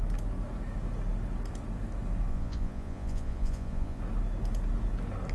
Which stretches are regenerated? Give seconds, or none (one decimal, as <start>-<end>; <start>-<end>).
2.3-4.0